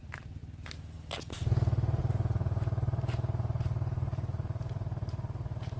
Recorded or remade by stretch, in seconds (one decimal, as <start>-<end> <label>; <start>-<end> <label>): 0.0-2.0 recorded; 2.0-5.8 remade